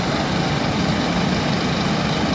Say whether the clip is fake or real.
real